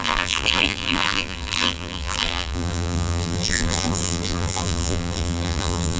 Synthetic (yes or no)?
yes